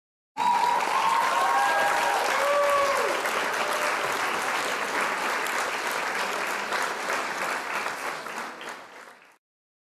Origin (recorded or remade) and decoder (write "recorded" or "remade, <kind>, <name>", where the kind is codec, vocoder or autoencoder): recorded